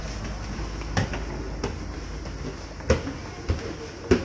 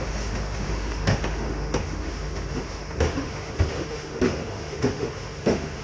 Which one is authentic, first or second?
first